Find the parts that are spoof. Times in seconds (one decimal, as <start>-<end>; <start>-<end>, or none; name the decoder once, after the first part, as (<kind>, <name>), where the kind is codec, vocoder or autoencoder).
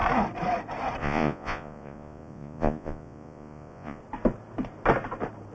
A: 1.0-4.0 (vocoder, Vocos)